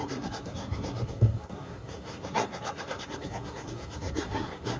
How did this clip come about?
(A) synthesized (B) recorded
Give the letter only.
A